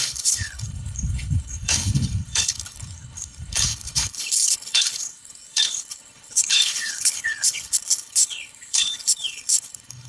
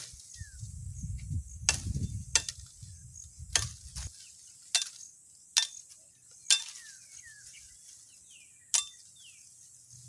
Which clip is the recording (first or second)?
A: second